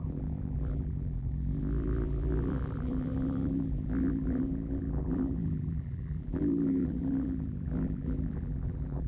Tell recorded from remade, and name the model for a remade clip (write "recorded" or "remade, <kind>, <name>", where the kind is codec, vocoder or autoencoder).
remade, vocoder, BigVGAN v2